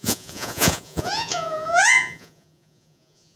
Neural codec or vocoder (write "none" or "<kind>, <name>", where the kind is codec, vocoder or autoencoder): vocoder, Vocos